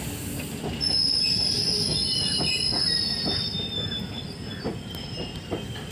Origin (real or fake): real